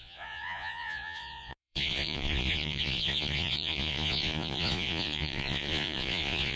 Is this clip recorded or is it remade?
remade